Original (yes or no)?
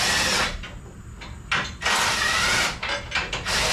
yes